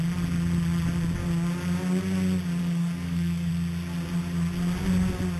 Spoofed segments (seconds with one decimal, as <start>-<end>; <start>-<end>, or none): 2.6-3.5